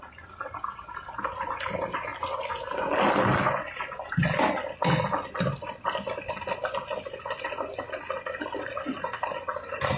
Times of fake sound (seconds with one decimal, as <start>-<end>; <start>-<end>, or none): none